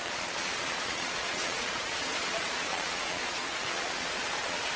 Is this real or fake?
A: fake